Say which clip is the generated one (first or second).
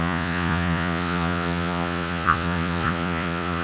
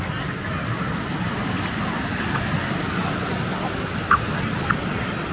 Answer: first